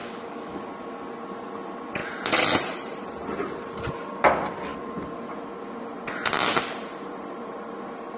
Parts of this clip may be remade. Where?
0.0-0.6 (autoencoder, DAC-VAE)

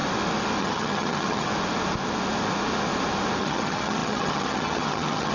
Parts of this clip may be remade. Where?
0.6-1.5 (vocoder, HiFi-GAN); 3.4-5.3

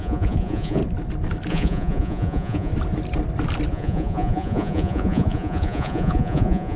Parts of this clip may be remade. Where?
0.0-0.8 (vocoder, Vocos); 1.5-2.7; 3.7-6.8

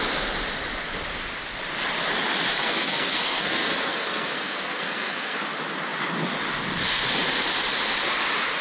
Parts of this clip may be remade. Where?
2.6-5.4 (codec, SNAC)

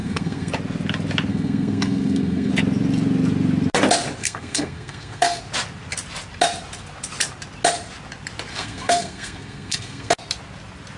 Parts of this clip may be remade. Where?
0.0-0.5 (codec, SNAC); 1.3-2.5; 4.2-5.4; 8.5-10.1

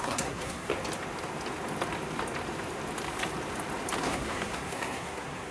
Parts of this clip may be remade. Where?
0.0-0.7 (codec, SNAC); 4.0-5.5

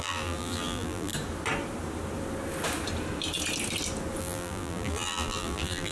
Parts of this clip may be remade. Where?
0.0-1.1 (vocoder, BigVGAN v2); 4.2-5.9